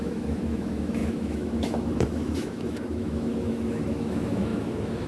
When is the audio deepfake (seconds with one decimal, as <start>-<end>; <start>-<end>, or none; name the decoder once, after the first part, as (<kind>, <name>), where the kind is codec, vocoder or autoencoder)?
0.0-5.1 (autoencoder, DAC-VAE)